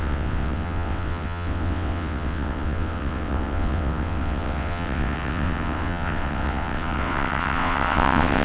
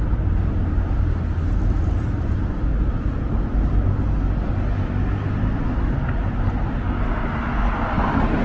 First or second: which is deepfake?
first